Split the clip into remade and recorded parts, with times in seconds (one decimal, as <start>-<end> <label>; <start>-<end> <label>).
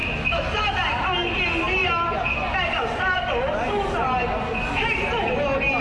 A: 0.0-0.5 remade; 0.5-5.8 recorded